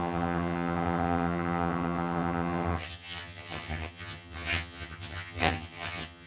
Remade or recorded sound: remade